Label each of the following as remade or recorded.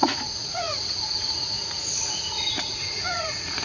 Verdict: remade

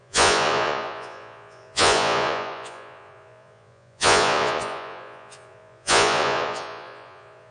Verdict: remade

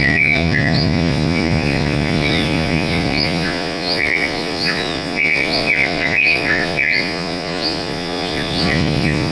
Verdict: remade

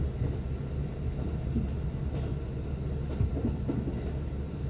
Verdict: recorded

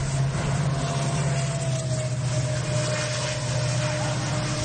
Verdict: recorded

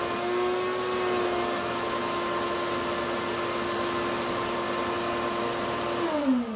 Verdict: recorded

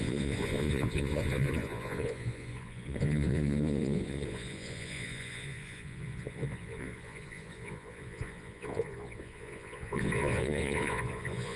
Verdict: remade